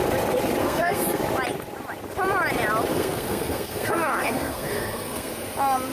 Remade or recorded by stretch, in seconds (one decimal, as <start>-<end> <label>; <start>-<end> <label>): 0.0-0.6 recorded; 0.6-1.2 remade; 1.2-2.9 recorded; 2.9-5.3 remade; 5.3-5.9 recorded

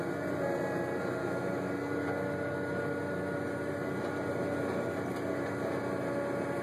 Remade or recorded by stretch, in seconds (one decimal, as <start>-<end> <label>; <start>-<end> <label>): 0.0-1.2 recorded; 1.2-1.7 remade; 1.7-6.6 recorded

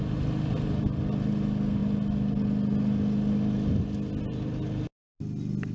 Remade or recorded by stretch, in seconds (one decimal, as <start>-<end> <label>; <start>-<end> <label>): 0.0-5.7 recorded

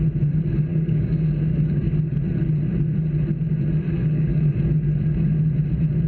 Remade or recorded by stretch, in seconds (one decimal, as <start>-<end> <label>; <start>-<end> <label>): 0.0-0.7 recorded; 0.7-2.2 remade; 2.2-3.9 recorded; 3.9-4.5 remade; 4.5-6.1 recorded

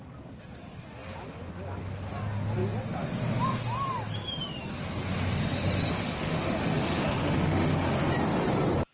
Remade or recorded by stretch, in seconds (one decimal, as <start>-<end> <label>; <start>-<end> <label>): 0.0-6.0 recorded; 6.0-8.0 remade; 8.0-8.9 recorded

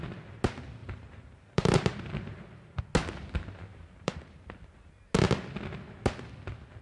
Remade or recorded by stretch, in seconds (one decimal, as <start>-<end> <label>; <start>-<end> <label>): 0.0-0.8 recorded; 0.8-2.8 remade; 2.8-3.7 recorded; 3.7-4.9 remade; 4.9-6.8 recorded